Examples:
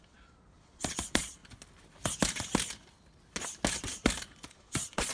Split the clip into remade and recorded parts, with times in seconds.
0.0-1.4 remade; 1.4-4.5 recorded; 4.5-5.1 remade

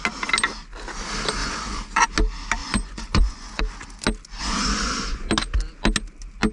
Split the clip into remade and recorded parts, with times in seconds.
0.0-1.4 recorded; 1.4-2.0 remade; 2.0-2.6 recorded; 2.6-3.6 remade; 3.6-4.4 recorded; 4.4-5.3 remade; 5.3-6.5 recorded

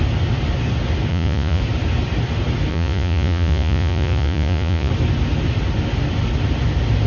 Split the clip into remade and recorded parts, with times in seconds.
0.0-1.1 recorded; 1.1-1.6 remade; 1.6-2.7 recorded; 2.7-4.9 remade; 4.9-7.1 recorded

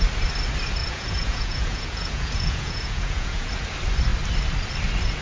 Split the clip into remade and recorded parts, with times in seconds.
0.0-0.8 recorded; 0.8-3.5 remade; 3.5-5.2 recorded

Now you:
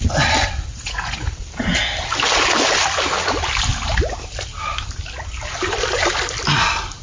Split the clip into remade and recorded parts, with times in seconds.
0.0-0.7 recorded; 0.7-1.4 remade; 1.4-7.0 recorded

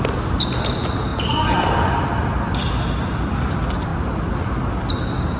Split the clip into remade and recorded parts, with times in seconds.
0.0-5.4 recorded